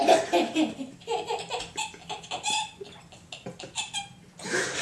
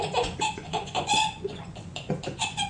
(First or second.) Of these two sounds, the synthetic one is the second